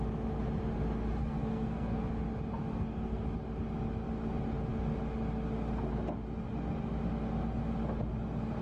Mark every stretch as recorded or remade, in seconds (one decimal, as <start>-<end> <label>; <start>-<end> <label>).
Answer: 0.0-1.2 recorded; 1.2-2.0 remade; 2.0-2.7 recorded; 2.7-3.2 remade; 3.2-8.6 recorded

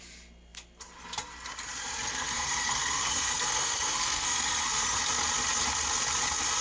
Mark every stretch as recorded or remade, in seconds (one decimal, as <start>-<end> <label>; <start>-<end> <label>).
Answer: 0.0-2.1 recorded; 2.1-5.0 remade; 5.0-6.6 recorded

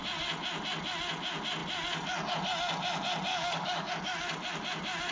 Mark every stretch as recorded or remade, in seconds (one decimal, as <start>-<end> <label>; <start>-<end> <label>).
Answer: 0.0-3.3 recorded; 3.3-3.9 remade; 3.9-5.1 recorded

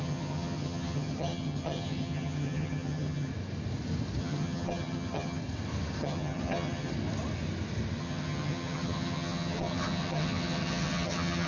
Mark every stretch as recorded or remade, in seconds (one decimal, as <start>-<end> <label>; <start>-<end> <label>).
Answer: 0.0-3.3 remade; 3.3-4.2 recorded; 4.2-5.4 remade; 5.4-6.0 recorded; 6.0-6.9 remade; 6.9-8.0 recorded; 8.0-11.5 remade

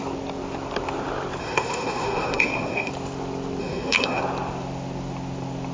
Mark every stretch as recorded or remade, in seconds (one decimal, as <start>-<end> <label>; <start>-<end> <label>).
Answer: 0.0-1.4 recorded; 1.4-2.9 remade; 2.9-3.6 recorded; 3.6-4.2 remade; 4.2-5.7 recorded

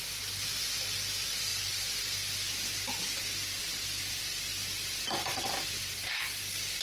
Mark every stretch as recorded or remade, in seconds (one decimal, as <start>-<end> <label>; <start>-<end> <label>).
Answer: 0.0-1.5 recorded; 1.5-3.0 remade; 3.0-4.5 recorded; 4.5-5.7 remade; 5.7-6.8 recorded

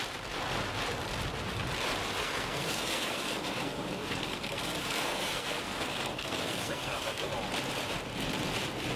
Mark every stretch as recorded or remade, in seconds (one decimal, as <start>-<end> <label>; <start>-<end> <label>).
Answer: 0.0-2.2 recorded; 2.2-7.3 remade; 7.3-9.0 recorded